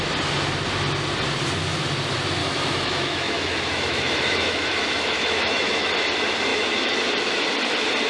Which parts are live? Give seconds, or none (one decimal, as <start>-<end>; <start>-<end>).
0.0-2.4; 5.9-6.5; 7.0-8.1